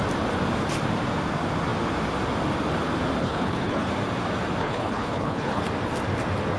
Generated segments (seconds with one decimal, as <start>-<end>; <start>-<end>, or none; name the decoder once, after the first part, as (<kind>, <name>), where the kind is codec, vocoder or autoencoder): 3.2-3.9 (codec, HILCodec); 4.6-5.6